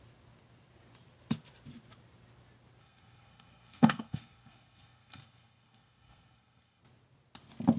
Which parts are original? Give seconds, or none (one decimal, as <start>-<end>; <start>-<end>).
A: 0.0-2.8; 6.8-7.8